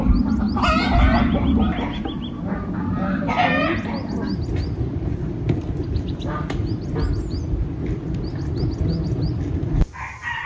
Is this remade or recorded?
recorded